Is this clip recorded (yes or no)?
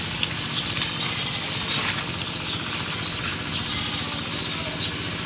yes